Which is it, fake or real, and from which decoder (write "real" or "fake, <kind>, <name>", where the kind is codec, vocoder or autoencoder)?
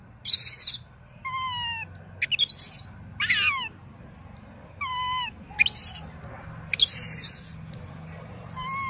real